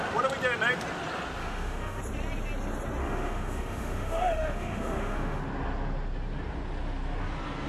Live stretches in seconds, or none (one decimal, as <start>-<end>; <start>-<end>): 0.0-1.4; 2.0-3.0; 5.4-7.7